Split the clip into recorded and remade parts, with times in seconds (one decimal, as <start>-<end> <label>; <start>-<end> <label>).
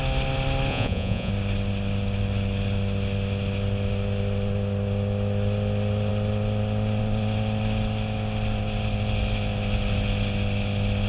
0.0-0.7 recorded; 0.7-1.3 remade; 1.3-11.1 recorded